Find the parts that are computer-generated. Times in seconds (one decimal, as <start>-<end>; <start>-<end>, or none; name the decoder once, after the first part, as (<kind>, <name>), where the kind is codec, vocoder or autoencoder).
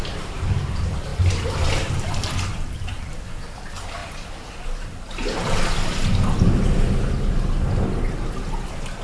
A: 2.5-3.2 (vocoder, BigVGAN v2)